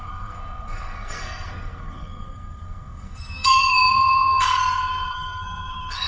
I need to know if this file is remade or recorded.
remade